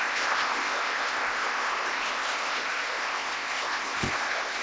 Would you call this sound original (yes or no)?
no